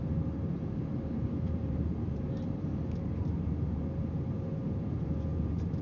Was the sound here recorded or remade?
remade